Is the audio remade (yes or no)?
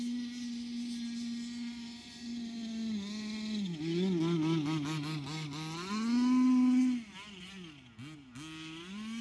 no